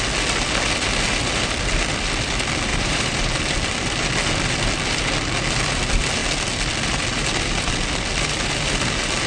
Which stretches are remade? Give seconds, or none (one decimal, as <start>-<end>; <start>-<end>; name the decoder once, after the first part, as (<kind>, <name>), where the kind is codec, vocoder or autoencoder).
2.7-3.4 (vocoder, BigVGAN v2)

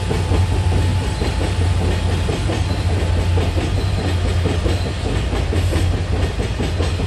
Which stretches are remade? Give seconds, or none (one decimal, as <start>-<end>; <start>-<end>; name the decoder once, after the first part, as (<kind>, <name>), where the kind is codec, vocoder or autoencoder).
0.9-1.4 (vocoder, BigVGAN v2)